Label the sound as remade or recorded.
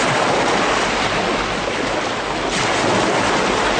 recorded